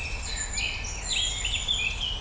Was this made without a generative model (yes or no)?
yes